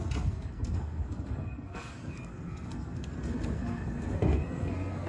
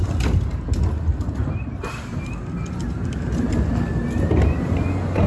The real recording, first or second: second